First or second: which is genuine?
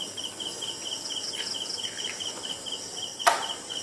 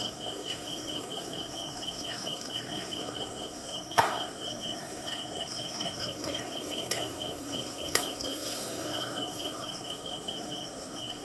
first